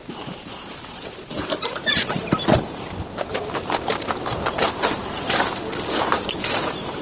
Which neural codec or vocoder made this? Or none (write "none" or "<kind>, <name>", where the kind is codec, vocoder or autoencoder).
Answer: vocoder, BigVGAN v2